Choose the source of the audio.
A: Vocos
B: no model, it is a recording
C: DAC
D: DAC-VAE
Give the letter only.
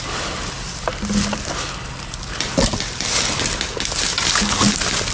B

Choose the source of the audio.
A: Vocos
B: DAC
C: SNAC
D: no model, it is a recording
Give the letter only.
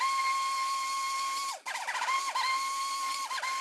D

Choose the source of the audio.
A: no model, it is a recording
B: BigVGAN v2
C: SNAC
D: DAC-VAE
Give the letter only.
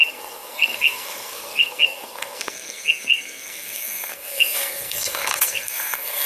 C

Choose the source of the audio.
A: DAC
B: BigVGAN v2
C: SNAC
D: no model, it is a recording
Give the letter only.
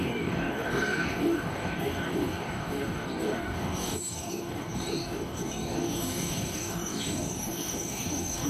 A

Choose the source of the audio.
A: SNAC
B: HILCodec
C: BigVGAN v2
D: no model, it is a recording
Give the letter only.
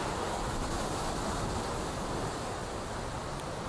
D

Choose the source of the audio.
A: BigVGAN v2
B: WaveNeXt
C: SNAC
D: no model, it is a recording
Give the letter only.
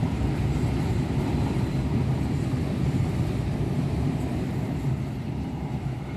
A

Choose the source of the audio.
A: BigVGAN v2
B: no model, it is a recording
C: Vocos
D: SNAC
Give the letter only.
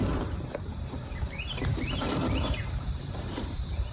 A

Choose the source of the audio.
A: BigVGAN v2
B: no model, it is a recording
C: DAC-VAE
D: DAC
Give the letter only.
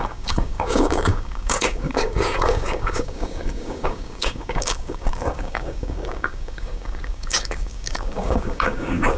D